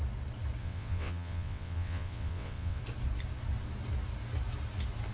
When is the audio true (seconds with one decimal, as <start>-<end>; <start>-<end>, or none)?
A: 0.0-0.6; 2.8-5.1